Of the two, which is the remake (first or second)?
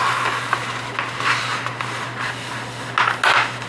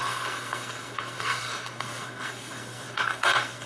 second